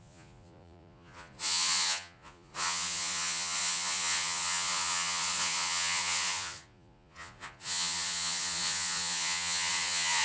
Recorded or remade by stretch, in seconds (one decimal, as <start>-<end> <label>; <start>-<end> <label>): 0.0-10.2 remade